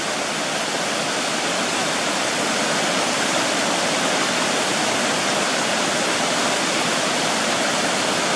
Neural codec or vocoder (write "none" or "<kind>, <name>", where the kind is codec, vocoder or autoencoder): none